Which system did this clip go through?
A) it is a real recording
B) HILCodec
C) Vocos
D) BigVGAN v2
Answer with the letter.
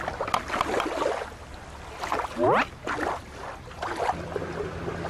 A